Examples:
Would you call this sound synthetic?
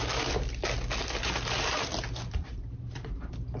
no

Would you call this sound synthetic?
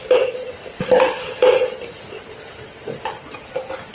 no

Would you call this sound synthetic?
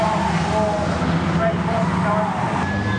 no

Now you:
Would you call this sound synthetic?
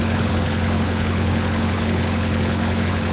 yes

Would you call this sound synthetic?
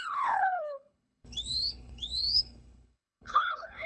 yes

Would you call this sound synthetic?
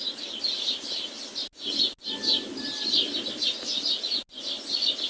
no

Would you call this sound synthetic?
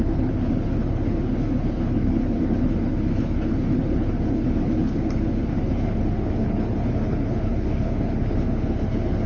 yes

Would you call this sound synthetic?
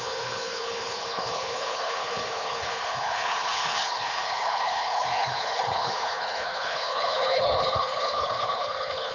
yes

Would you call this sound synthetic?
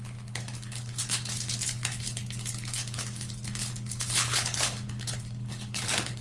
yes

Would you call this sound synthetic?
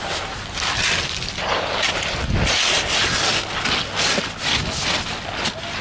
no